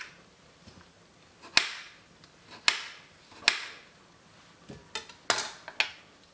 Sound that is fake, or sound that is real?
real